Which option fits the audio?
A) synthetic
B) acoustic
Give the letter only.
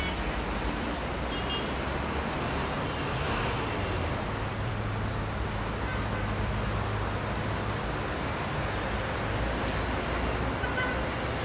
B